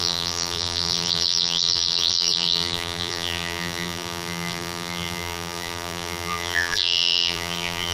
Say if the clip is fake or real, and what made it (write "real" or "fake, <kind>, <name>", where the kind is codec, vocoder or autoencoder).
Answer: fake, vocoder, BigVGAN v2